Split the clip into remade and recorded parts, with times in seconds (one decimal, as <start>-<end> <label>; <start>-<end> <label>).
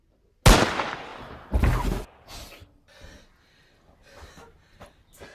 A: 0.0-5.3 recorded